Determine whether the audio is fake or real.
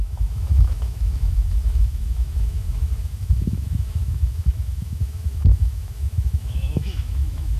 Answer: fake